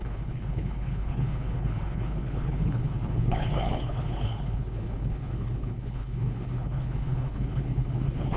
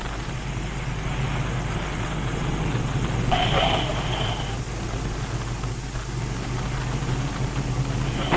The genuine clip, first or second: second